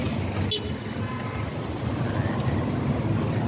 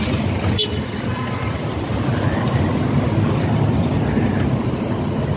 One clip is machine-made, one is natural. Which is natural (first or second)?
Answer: first